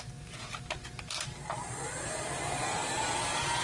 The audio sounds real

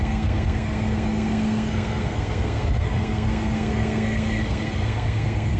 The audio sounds fake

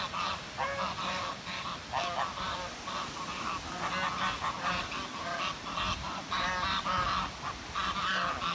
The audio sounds real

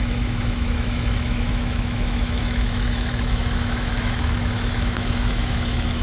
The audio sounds fake